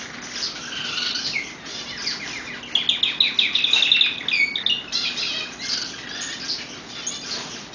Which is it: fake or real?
real